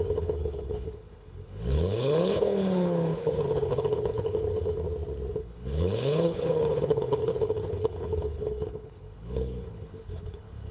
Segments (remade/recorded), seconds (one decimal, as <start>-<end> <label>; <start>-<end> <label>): 0.0-4.8 remade; 4.8-5.4 recorded; 5.4-10.7 remade